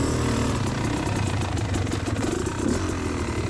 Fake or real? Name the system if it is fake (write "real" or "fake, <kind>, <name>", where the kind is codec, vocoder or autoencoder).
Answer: real